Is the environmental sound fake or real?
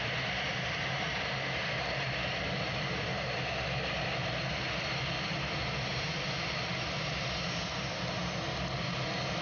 real